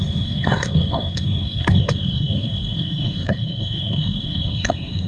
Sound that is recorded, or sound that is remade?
remade